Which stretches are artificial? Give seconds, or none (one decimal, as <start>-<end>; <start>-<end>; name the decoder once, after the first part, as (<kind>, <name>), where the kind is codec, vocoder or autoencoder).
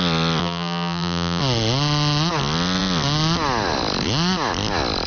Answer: 0.4-1.4 (vocoder, BigVGAN v2)